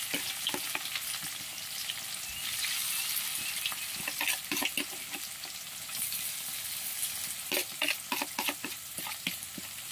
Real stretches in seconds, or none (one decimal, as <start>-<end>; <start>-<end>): 0.0-9.9